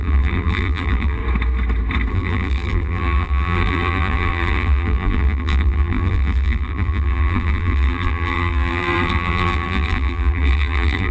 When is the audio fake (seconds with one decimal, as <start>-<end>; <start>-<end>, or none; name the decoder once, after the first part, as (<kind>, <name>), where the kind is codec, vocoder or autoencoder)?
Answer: 0.0-1.2 (vocoder, BigVGAN v2); 2.1-11.1